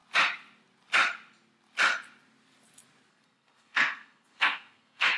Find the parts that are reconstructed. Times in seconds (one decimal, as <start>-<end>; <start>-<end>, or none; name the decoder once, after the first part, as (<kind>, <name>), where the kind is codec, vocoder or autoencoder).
3.1-5.2 (codec, SNAC)